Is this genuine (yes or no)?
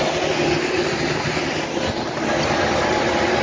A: yes